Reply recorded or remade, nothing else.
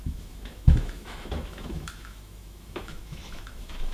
remade